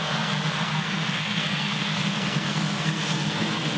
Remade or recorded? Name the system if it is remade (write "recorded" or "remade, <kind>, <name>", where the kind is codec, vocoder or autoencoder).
remade, codec, SNAC